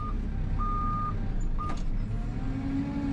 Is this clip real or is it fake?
real